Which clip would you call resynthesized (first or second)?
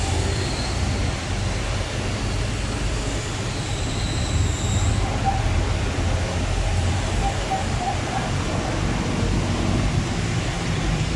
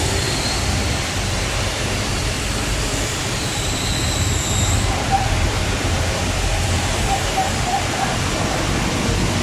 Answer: second